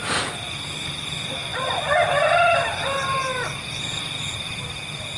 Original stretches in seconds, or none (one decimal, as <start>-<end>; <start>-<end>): 0.0-5.2